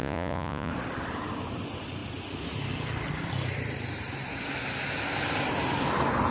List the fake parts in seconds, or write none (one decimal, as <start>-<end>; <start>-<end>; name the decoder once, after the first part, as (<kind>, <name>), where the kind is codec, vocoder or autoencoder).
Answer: 0.0-0.7 (vocoder, Vocos)